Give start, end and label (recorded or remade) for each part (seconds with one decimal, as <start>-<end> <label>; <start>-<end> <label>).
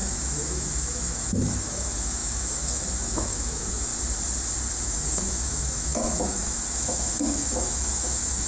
0.0-3.9 remade; 3.9-4.8 recorded; 4.8-8.5 remade